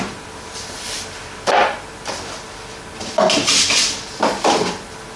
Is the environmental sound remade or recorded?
remade